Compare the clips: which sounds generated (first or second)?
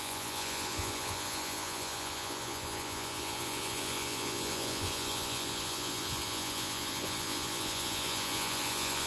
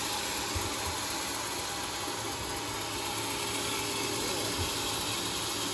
first